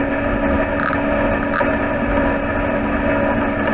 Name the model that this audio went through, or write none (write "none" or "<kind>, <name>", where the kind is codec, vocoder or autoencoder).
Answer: none